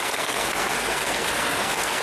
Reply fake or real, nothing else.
fake